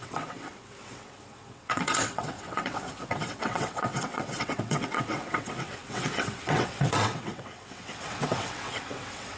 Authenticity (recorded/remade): remade